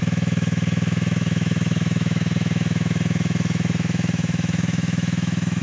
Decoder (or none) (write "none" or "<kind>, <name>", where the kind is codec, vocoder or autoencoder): autoencoder, DAC-VAE